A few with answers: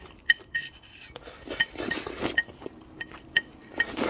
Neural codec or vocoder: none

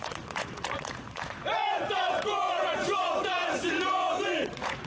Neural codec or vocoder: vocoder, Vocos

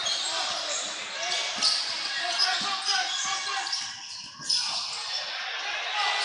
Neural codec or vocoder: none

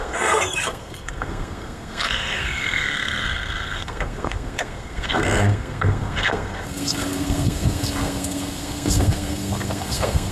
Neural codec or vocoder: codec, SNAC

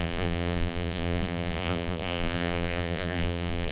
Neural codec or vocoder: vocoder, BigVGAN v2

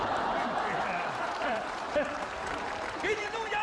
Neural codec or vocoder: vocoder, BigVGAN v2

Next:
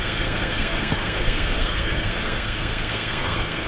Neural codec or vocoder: codec, SNAC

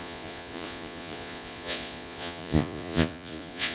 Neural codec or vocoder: vocoder, Vocos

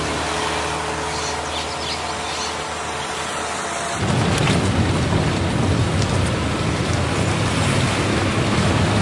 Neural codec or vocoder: none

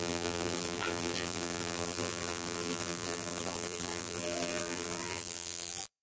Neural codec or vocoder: vocoder, BigVGAN v2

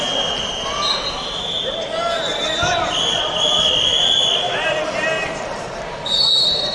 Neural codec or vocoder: vocoder, BigVGAN v2